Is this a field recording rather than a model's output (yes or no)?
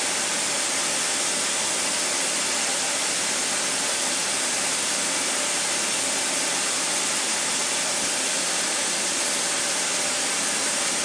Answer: no